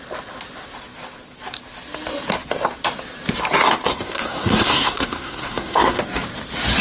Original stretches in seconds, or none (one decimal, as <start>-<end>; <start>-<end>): 0.0-3.9; 6.0-6.8